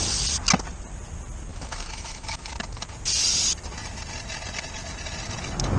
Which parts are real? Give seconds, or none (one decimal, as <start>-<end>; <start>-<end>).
0.0-1.5; 2.5-5.8